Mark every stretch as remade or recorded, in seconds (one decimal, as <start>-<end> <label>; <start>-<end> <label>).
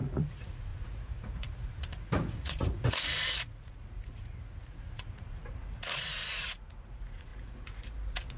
0.0-8.4 remade